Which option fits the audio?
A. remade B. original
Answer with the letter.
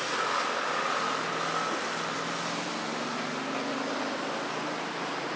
B